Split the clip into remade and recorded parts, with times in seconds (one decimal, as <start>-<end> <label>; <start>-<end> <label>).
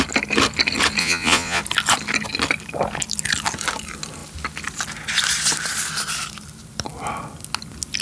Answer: 0.0-1.0 recorded; 1.0-1.6 remade; 1.6-8.0 recorded